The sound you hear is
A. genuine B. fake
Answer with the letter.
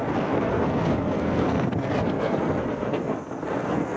B